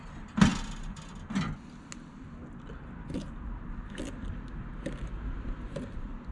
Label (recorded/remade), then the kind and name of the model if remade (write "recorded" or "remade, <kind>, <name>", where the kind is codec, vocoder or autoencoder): recorded